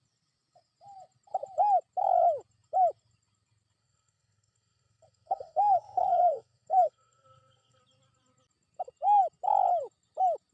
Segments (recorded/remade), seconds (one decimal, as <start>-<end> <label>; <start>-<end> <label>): 0.0-3.8 recorded; 3.8-7.8 remade; 7.8-10.5 recorded